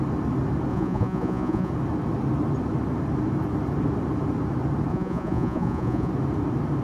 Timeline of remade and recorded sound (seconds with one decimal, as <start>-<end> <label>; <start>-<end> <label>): 0.0-0.7 recorded; 0.7-1.7 remade; 1.7-4.9 recorded; 4.9-6.1 remade; 6.1-6.8 recorded